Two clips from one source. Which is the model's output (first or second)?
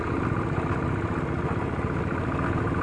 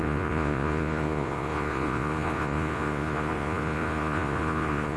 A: second